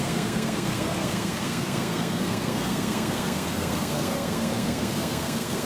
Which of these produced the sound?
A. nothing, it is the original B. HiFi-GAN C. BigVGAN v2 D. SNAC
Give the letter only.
D